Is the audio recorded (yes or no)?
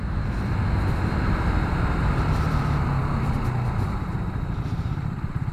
no